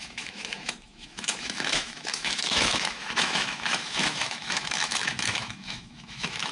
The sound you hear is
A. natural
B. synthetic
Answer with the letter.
B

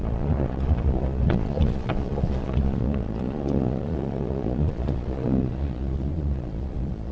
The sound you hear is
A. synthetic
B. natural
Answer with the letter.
A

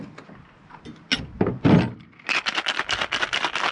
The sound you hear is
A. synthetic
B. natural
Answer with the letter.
B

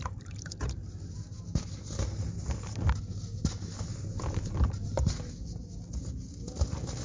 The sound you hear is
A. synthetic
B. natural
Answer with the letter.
B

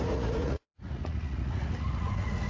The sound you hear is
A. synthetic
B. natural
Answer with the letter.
A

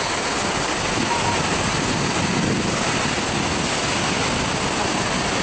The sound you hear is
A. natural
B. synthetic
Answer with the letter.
A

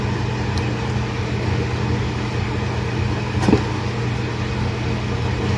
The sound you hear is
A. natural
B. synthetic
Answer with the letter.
A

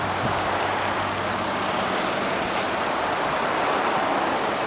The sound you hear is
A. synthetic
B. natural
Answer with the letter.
B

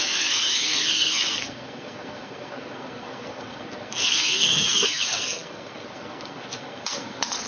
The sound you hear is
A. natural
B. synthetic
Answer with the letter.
B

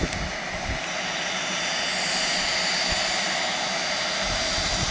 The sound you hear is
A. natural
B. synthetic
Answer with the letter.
A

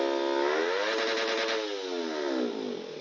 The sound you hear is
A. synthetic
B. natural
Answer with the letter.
B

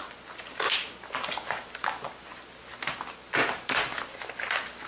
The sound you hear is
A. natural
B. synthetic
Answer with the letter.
A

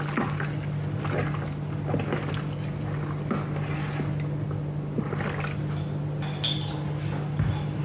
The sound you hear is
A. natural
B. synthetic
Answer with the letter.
A